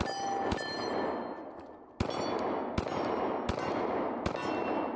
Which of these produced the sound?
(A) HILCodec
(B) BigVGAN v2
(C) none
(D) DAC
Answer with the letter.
C